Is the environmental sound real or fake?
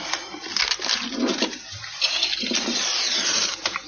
real